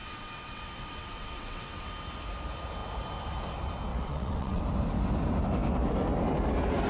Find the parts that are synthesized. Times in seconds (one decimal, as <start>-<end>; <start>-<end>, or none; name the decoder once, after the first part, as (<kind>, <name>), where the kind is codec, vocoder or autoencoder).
0.0-1.9 (vocoder, WaveNeXt); 3.9-4.6